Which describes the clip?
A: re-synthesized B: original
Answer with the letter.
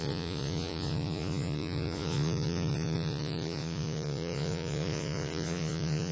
A